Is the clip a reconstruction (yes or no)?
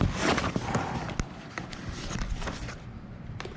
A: no